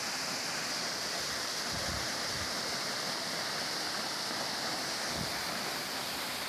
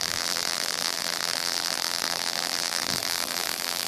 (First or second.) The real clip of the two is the first